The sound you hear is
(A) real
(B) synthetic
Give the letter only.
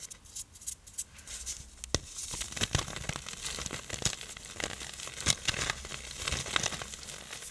A